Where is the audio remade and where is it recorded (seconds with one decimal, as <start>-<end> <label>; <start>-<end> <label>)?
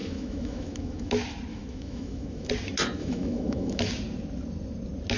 0.0-1.1 remade; 1.1-1.5 recorded; 1.5-2.5 remade; 2.5-3.0 recorded; 3.0-3.8 remade; 3.8-5.2 recorded